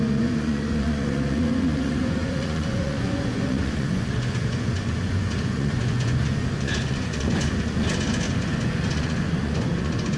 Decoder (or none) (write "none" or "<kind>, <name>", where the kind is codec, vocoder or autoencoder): vocoder, Vocos